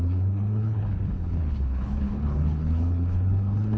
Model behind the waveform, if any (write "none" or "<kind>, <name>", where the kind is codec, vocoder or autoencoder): codec, HILCodec